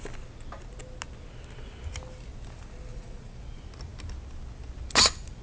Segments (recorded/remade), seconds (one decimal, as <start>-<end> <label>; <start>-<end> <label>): 0.0-2.9 recorded; 2.9-3.4 remade; 3.4-5.4 recorded